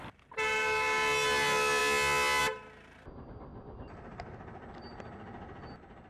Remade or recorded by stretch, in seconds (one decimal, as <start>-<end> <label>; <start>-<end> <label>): 0.0-6.1 recorded